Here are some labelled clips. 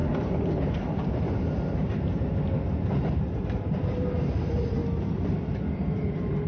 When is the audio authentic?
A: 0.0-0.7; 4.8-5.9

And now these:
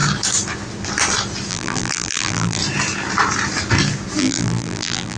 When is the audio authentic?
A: 0.0-1.5; 2.6-4.2

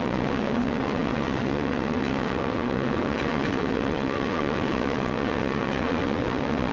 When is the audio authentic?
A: none

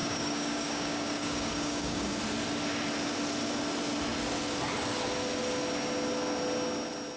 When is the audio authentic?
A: 2.2-7.2

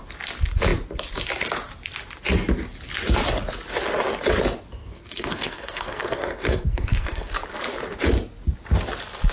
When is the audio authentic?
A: 0.0-4.8; 7.3-9.3

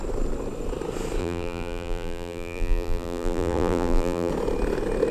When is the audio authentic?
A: 0.0-1.2; 4.3-5.1

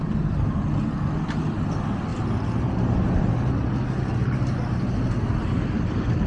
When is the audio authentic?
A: 0.0-6.3